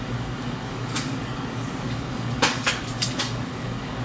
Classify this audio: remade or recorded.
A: remade